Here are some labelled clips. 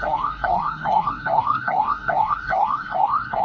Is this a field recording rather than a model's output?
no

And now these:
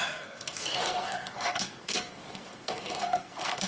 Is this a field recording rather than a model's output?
no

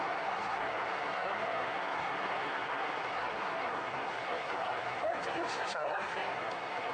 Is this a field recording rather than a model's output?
no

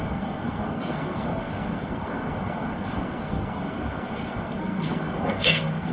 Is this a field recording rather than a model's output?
no